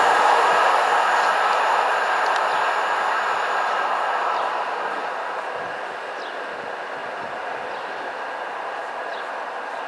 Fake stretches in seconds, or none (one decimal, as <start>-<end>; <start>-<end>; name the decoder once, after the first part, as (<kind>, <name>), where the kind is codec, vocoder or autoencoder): none